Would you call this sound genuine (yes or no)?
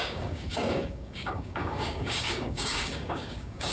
no